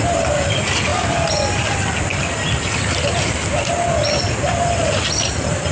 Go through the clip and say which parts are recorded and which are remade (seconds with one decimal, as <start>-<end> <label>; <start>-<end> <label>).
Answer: 0.0-5.7 recorded